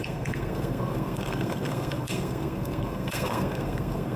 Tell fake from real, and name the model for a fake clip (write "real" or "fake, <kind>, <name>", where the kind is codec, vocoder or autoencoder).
fake, codec, SNAC